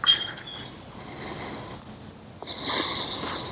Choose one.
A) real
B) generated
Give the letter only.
A